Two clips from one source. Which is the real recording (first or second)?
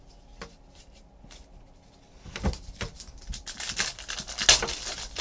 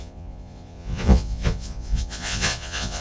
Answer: first